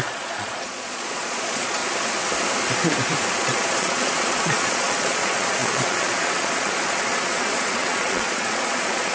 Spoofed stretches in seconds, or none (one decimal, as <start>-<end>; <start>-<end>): 0.0-1.8; 3.3-9.1

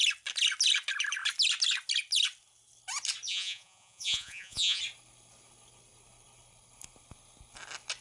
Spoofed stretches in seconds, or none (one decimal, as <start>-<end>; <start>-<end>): 3.3-4.8

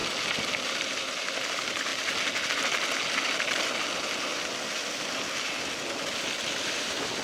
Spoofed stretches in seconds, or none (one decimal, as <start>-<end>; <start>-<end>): none

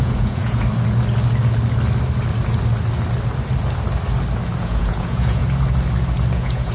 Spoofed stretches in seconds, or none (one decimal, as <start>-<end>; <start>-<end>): 0.0-0.6; 4.6-5.4; 6.3-6.7

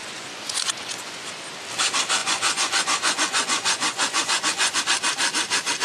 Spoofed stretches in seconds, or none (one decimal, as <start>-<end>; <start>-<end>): 0.0-1.3; 2.2-4.8